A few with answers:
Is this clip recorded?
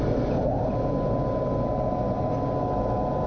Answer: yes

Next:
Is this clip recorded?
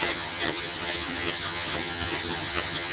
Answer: no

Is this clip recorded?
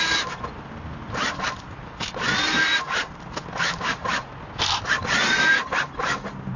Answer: yes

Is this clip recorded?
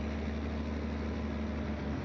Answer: yes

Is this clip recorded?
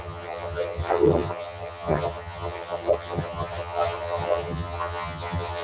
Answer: no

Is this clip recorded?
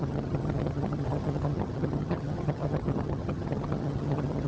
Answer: no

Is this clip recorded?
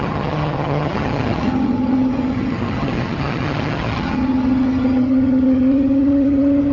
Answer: no